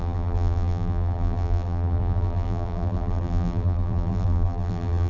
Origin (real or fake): fake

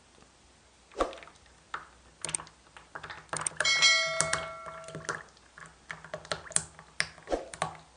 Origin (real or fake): real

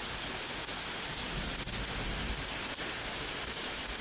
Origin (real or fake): real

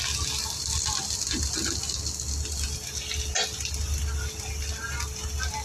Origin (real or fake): real